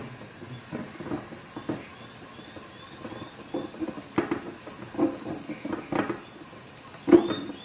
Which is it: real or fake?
real